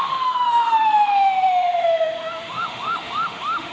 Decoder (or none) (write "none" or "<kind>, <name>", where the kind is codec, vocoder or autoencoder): autoencoder, DAC-VAE